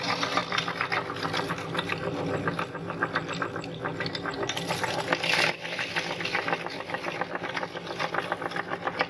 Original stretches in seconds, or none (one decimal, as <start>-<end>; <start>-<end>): 0.0-9.1